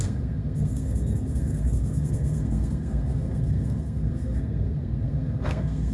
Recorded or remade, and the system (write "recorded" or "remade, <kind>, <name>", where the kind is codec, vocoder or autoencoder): remade, codec, SNAC